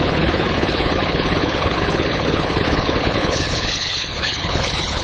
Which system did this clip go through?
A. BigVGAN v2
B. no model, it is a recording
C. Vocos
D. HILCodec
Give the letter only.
D